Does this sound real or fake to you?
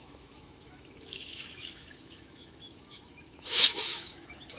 fake